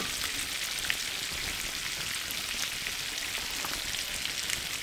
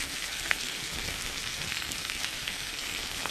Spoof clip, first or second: second